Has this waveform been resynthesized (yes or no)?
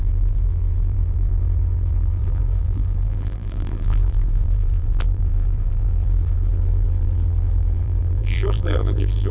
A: yes